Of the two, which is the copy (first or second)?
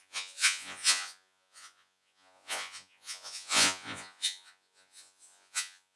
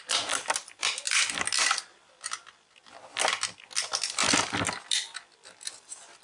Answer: first